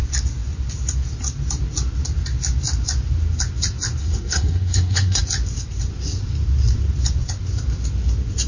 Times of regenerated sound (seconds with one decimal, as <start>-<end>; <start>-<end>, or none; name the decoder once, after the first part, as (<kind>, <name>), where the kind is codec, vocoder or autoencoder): 4.0-5.2 (codec, SNAC)